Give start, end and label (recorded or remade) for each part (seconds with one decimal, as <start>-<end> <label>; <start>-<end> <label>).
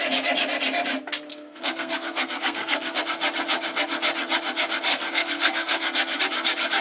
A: 0.0-1.3 recorded; 1.3-3.0 remade; 3.0-4.9 recorded; 4.9-6.2 remade; 6.2-6.8 recorded